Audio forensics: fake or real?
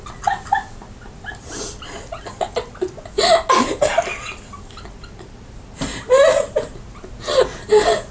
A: real